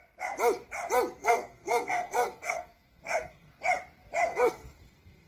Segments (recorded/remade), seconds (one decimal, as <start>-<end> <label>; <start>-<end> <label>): 0.0-1.2 recorded; 1.2-3.5 remade; 3.5-4.3 recorded; 4.3-5.3 remade